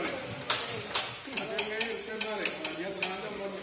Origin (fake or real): real